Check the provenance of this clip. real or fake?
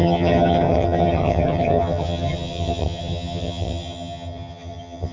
fake